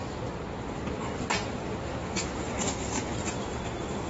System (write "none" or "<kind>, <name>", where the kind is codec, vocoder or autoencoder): none